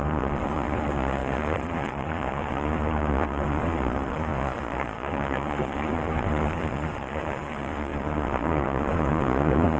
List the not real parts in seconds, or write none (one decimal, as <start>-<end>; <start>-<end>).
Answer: 0.0-9.8